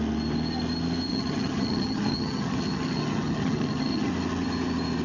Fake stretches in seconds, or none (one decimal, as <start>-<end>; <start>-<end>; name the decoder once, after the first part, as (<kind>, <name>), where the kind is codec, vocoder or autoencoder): 1.1-4.1 (vocoder, HiFi-GAN)